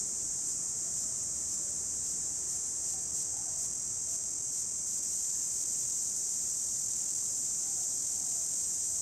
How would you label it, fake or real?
fake